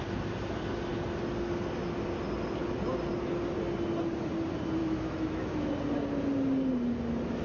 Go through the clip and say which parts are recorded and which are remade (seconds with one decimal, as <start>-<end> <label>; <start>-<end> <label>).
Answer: 0.0-4.8 recorded; 4.8-5.7 remade; 5.7-7.4 recorded